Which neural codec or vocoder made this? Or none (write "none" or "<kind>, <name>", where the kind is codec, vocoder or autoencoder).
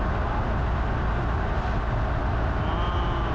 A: none